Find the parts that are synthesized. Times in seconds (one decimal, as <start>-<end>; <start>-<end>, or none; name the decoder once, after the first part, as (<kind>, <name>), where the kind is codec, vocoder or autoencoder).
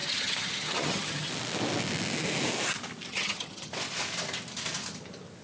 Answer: 0.0-1.3 (vocoder, HiFi-GAN); 3.1-3.7